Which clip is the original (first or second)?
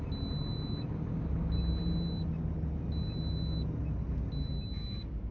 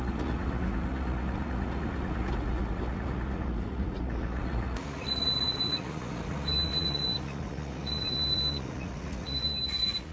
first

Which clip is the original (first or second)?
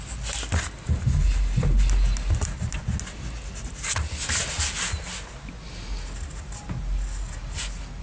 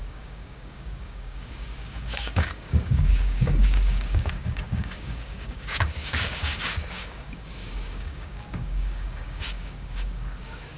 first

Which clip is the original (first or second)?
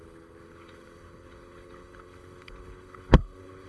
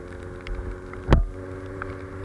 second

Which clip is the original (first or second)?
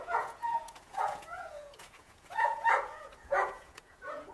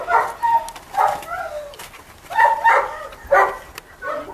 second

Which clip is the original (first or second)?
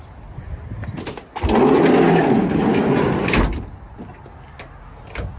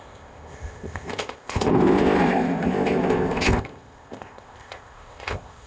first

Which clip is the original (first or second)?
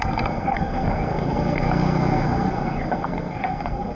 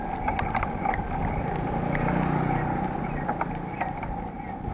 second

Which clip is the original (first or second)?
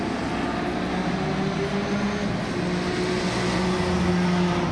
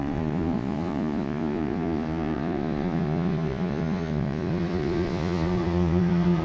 first